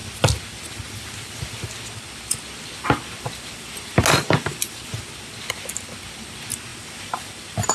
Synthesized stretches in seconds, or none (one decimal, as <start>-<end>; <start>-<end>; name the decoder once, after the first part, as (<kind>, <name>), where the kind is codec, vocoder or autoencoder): none